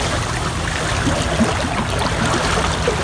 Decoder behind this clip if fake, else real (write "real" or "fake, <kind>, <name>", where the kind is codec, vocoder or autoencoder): real